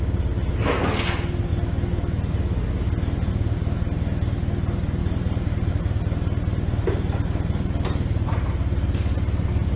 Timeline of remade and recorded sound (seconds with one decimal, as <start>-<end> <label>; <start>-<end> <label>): 0.0-5.0 recorded; 5.0-5.7 remade; 5.7-9.8 recorded